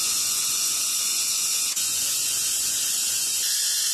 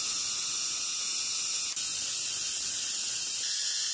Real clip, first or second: second